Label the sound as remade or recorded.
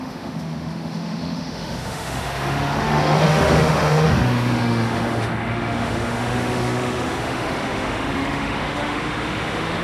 remade